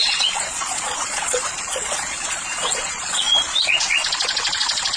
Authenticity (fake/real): fake